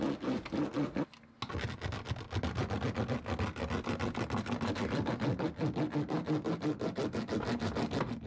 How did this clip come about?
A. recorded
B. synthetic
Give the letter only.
A